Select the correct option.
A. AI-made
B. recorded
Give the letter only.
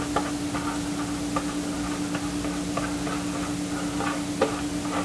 B